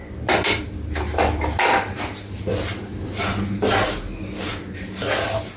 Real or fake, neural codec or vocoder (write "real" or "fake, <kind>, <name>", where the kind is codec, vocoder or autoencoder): real